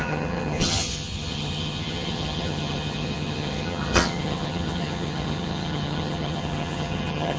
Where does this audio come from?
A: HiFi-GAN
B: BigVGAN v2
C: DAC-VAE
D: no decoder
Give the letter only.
A